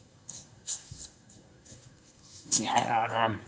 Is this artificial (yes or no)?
yes